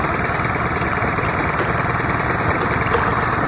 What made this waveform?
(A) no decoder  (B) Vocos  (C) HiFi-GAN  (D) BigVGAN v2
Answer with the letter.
A